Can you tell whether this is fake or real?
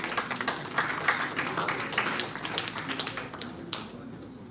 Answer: real